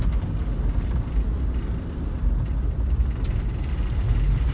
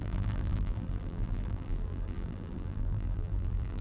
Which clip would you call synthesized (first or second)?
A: second